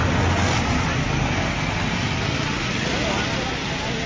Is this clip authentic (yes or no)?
yes